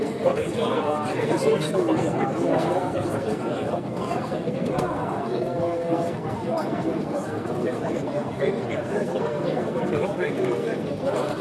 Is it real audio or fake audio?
fake